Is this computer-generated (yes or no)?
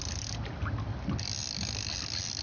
no